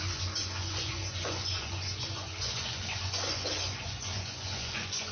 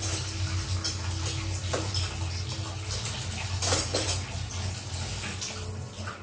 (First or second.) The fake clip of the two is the first